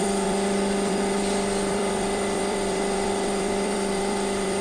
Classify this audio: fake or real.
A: fake